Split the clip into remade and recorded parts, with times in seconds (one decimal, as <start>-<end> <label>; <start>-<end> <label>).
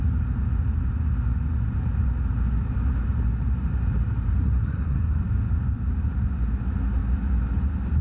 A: 0.0-4.4 recorded; 4.4-5.2 remade; 5.2-8.0 recorded